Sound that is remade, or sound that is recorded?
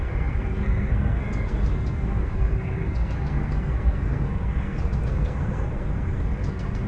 remade